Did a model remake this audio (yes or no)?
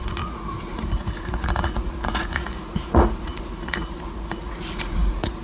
yes